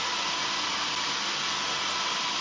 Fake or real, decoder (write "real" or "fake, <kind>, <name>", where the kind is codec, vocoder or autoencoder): real